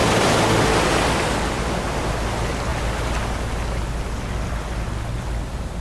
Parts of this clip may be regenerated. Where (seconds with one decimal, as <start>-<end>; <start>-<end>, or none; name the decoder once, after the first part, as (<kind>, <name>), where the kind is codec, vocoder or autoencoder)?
none